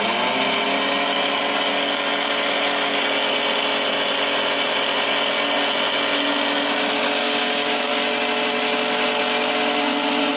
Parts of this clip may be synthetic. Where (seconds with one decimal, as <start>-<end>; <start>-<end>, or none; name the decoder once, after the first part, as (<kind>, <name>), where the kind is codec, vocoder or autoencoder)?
7.2-7.9 (codec, DAC)